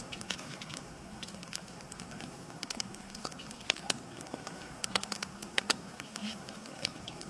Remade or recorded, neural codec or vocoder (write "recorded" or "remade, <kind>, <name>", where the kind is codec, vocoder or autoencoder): remade, codec, SNAC